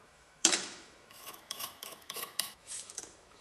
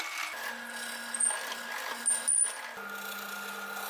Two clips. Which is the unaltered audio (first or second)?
second